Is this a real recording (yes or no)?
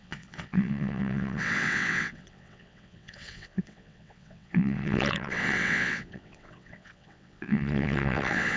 no